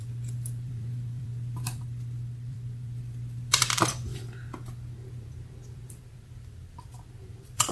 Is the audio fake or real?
fake